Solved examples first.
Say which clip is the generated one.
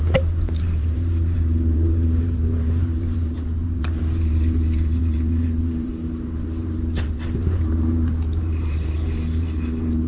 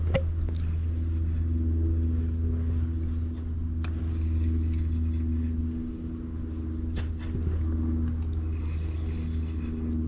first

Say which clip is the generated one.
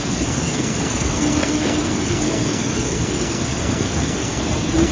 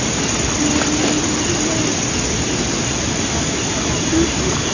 first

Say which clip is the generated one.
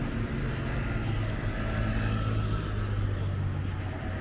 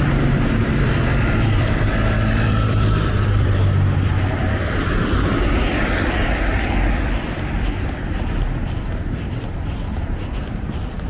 second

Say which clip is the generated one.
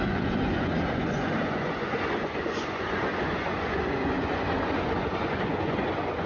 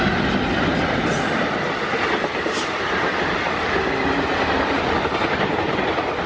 first